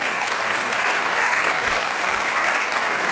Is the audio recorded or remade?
remade